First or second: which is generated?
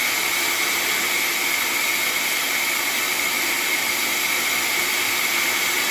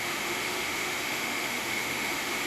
second